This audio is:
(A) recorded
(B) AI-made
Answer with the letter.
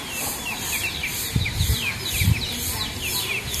A